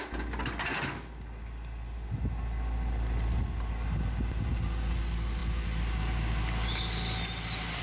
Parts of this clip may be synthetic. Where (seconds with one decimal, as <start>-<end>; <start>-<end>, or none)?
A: none